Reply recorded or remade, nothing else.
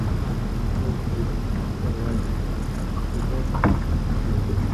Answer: recorded